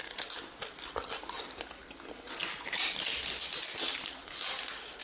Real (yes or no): yes